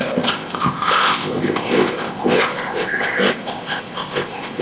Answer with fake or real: fake